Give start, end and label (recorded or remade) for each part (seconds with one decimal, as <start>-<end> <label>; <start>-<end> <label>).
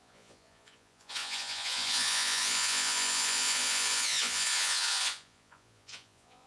0.0-6.5 remade